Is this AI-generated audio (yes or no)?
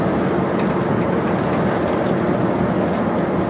no